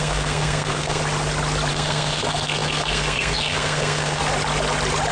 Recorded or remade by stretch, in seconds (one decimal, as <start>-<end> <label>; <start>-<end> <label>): 0.0-1.0 remade; 1.0-1.7 recorded; 1.7-4.2 remade; 4.2-5.1 recorded